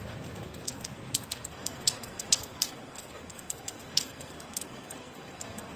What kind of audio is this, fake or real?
fake